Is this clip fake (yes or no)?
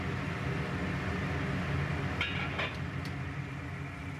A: no